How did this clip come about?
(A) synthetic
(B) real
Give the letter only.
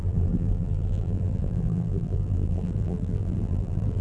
A